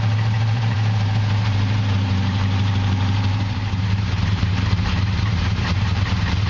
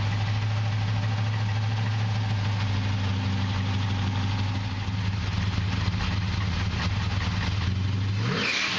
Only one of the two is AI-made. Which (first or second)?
first